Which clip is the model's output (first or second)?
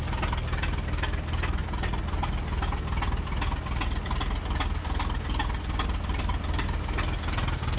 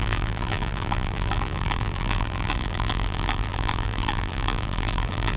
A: second